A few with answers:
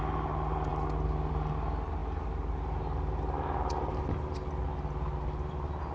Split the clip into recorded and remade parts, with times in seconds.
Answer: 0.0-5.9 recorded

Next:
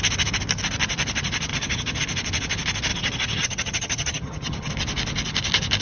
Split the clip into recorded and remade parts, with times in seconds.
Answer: 0.0-1.5 recorded; 1.5-2.0 remade; 2.0-2.9 recorded; 2.9-4.7 remade; 4.7-5.8 recorded